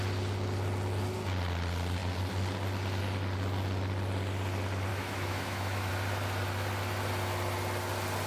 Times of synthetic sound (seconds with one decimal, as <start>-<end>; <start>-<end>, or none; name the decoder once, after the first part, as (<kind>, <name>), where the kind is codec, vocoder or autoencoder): 4.9-5.9 (autoencoder, DAC-VAE)